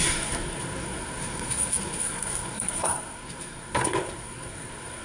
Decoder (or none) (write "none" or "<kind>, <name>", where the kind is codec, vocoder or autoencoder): codec, SNAC